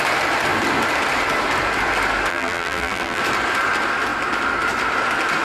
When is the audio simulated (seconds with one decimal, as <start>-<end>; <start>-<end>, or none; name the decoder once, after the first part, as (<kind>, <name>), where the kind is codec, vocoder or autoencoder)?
2.3-3.2 (vocoder, BigVGAN v2)